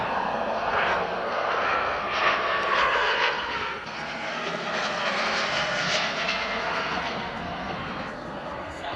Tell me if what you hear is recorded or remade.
remade